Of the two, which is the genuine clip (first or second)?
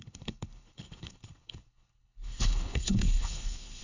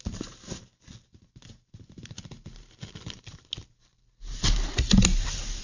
second